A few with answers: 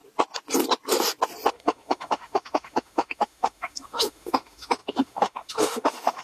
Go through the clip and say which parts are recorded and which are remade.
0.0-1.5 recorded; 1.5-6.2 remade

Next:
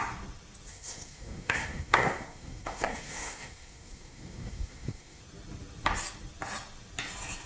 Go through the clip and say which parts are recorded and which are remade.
0.0-0.7 recorded; 0.7-5.2 remade; 5.2-7.5 recorded

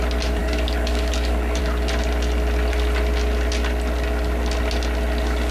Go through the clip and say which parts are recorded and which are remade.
0.0-0.4 recorded; 0.4-1.6 remade; 1.6-5.5 recorded

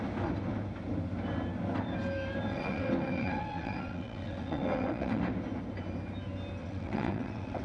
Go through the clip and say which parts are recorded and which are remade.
0.0-2.5 recorded; 2.5-5.2 remade; 5.2-6.6 recorded; 6.6-7.6 remade